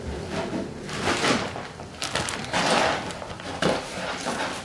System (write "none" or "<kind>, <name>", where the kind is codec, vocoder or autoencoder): none